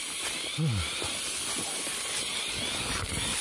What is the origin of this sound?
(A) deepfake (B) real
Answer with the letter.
B